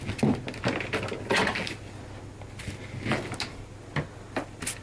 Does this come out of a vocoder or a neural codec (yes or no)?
no